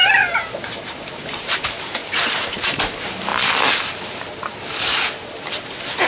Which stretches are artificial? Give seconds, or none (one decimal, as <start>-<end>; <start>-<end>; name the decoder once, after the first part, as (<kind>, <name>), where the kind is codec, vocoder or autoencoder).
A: 1.3-3.3 (vocoder, BigVGAN v2); 5.2-6.1